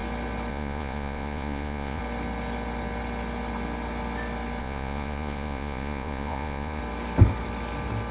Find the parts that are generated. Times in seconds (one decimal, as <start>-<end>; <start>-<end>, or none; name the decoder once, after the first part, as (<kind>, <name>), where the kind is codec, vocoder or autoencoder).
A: 0.5-2.0 (vocoder, Vocos); 4.6-6.8